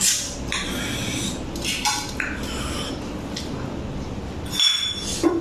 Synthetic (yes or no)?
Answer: no